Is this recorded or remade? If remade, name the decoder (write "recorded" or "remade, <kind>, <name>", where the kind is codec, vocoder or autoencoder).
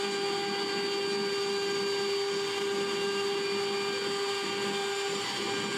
recorded